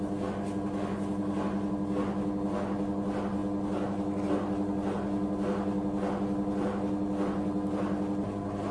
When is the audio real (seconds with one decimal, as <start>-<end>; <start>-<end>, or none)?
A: 0.0-8.7